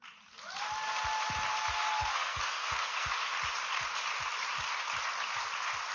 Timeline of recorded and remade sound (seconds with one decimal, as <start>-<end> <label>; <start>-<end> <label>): 0.0-2.0 recorded; 2.0-3.1 remade; 3.1-5.9 recorded